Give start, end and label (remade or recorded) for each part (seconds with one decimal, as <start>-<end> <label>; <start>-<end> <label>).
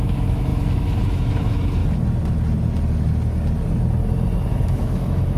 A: 0.0-1.8 remade; 1.8-4.5 recorded; 4.5-5.4 remade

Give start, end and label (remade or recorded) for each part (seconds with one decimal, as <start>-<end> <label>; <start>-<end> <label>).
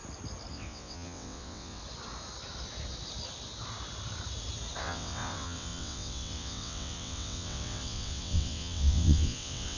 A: 0.0-0.5 recorded; 0.5-1.8 remade; 1.8-4.8 recorded; 4.8-9.8 remade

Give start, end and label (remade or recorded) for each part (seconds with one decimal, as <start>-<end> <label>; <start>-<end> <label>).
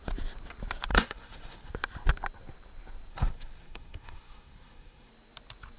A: 0.0-0.9 recorded; 0.9-1.7 remade; 1.7-3.1 recorded; 3.1-5.1 remade; 5.1-5.8 recorded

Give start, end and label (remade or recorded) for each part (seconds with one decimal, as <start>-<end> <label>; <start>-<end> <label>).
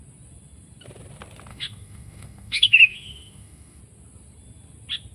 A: 0.0-1.5 recorded; 1.5-3.8 remade; 3.8-5.1 recorded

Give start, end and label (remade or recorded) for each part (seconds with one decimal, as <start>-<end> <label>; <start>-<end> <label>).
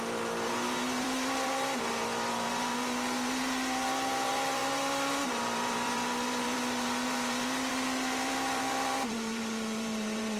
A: 0.0-10.4 remade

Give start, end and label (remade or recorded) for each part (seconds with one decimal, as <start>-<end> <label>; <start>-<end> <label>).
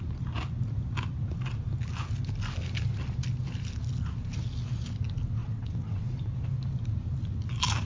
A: 0.0-5.4 recorded; 5.4-6.2 remade; 6.2-7.8 recorded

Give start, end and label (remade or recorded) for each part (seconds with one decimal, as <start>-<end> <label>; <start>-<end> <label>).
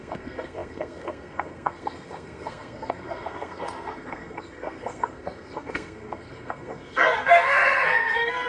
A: 0.0-8.5 remade